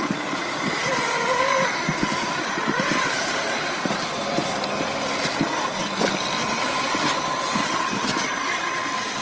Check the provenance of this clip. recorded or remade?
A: remade